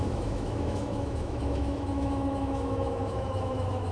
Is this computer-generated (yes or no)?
yes